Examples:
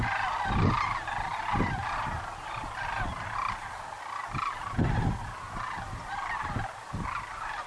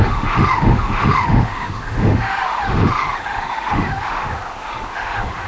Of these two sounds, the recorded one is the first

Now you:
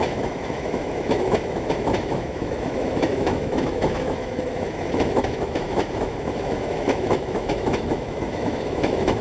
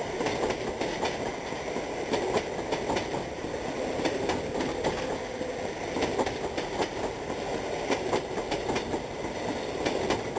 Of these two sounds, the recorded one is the second